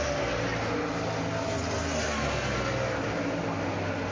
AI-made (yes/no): no